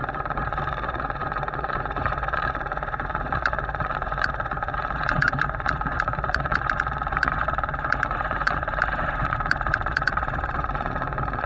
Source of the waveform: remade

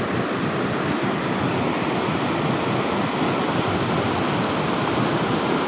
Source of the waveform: recorded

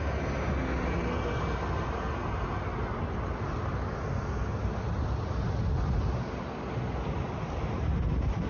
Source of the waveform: recorded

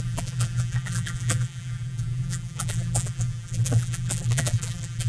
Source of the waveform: remade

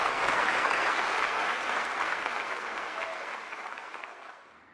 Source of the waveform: remade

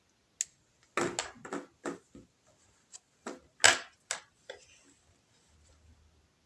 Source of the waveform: recorded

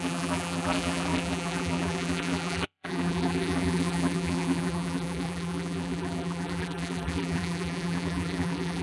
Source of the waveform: remade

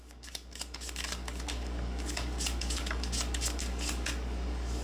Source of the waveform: remade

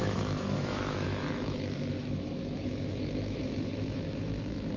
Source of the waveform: remade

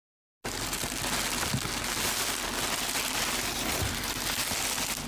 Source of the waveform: recorded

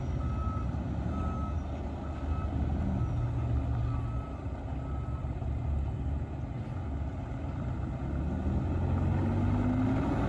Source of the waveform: recorded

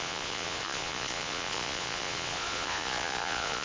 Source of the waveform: remade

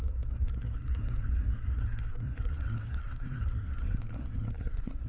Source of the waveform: remade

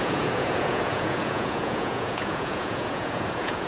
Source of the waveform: remade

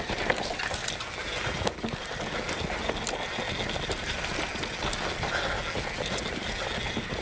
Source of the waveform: recorded